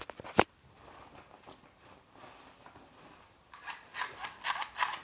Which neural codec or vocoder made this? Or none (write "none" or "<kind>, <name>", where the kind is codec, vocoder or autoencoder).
none